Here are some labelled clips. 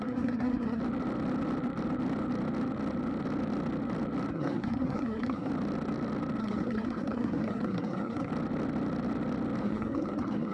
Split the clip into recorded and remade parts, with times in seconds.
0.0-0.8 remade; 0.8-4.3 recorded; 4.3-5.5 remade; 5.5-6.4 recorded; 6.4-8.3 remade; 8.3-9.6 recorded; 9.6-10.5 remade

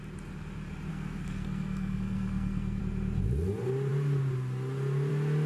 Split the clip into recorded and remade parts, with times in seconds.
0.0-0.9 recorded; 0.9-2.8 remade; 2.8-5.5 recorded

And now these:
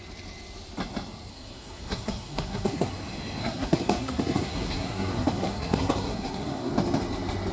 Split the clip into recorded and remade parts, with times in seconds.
0.0-1.3 recorded; 1.3-2.9 remade; 2.9-3.4 recorded; 3.4-6.7 remade; 6.7-7.5 recorded

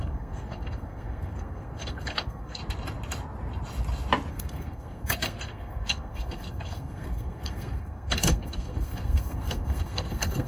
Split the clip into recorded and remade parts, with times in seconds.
0.0-2.6 remade; 2.6-4.3 recorded; 4.3-10.5 remade

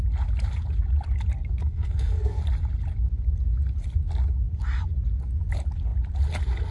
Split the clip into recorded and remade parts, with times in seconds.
0.0-1.6 recorded; 1.6-2.4 remade; 2.4-6.7 recorded

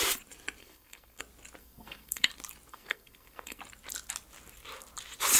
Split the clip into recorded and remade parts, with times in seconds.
0.0-0.6 recorded; 0.6-1.2 remade; 1.2-1.6 recorded; 1.6-2.3 remade; 2.3-2.7 recorded; 2.7-3.6 remade; 3.6-5.4 recorded